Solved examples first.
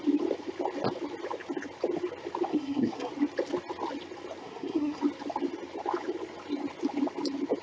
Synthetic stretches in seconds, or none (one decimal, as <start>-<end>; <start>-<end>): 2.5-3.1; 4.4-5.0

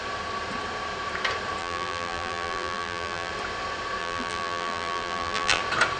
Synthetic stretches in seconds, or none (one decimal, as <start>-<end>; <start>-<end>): 1.6-3.3; 4.0-5.6

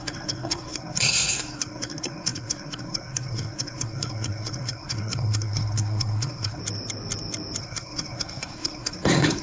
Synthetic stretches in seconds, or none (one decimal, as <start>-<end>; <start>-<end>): 0.0-6.6; 7.6-9.4

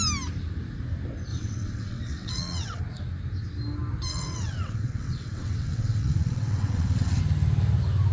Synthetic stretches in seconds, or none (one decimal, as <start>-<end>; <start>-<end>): 1.3-2.8; 4.1-7.2